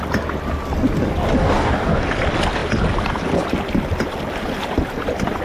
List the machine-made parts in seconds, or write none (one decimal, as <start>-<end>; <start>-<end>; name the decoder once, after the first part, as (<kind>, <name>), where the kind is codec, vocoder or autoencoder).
1.4-2.0 (codec, DAC)